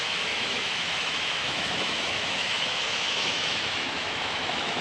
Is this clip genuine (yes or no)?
no